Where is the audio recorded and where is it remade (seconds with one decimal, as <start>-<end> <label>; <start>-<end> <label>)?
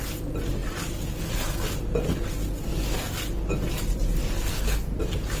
0.0-4.5 recorded; 4.5-5.0 remade; 5.0-5.4 recorded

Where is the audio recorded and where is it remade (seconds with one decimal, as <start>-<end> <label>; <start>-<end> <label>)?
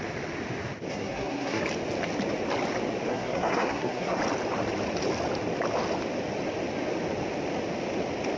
0.0-0.9 recorded; 0.9-1.6 remade; 1.6-3.1 recorded; 3.1-4.2 remade; 4.2-8.4 recorded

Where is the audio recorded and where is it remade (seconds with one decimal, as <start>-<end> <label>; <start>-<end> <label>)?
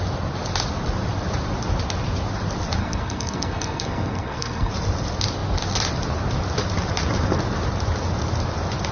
0.0-2.8 recorded; 2.8-4.7 remade; 4.7-8.9 recorded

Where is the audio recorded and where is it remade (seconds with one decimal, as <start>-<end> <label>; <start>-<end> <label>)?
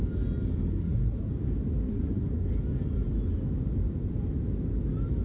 0.0-0.7 recorded; 0.7-1.3 remade; 1.3-1.9 recorded; 1.9-2.5 remade; 2.5-5.2 recorded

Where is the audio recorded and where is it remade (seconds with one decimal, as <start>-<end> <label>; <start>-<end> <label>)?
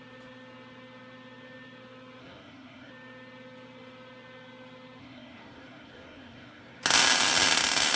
0.0-2.2 recorded; 2.2-2.9 remade; 2.9-5.0 recorded; 5.0-6.8 remade; 6.8-8.0 recorded